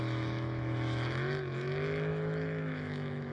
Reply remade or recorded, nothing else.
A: remade